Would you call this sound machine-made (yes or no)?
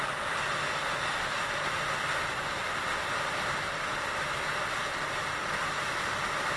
no